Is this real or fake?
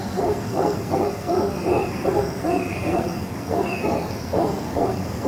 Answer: fake